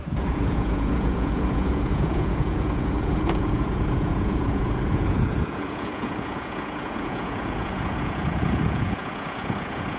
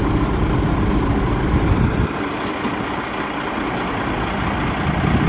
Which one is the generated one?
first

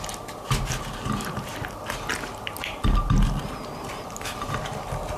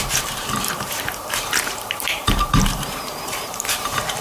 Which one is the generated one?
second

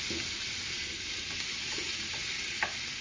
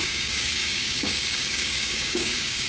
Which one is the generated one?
second